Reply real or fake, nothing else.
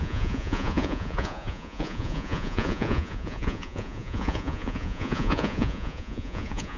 fake